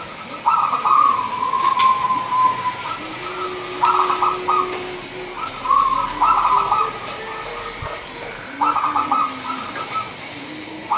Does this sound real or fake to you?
real